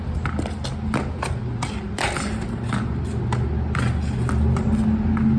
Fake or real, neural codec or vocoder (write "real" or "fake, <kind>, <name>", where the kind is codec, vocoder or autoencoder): real